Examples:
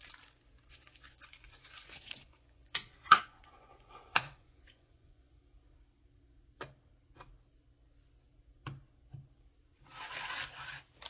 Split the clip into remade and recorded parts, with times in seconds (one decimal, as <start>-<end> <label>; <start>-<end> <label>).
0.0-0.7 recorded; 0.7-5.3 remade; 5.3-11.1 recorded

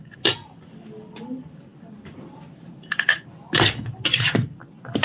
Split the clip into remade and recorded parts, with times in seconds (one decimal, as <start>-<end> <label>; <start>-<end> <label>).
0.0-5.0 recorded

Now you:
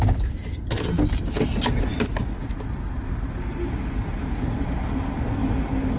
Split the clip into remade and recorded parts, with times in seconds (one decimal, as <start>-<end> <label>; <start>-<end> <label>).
0.0-6.0 recorded

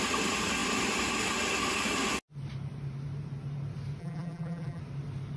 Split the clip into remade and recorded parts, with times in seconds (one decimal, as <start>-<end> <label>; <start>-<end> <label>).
0.0-4.0 recorded; 4.0-4.8 remade; 4.8-5.4 recorded

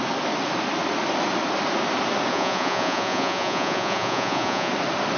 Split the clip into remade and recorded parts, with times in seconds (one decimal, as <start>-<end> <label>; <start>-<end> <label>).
0.0-2.3 recorded; 2.3-4.7 remade; 4.7-5.2 recorded

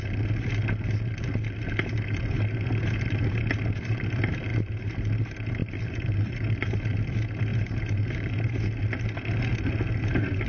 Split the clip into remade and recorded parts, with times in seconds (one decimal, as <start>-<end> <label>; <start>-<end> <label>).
0.0-4.5 recorded; 4.5-5.1 remade; 5.1-5.6 recorded; 5.6-6.8 remade; 6.8-7.5 recorded; 7.5-8.3 remade; 8.3-10.5 recorded